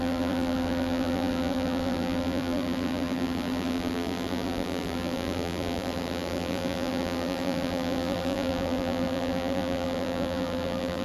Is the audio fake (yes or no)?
yes